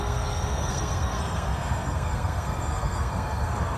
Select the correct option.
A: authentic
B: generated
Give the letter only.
B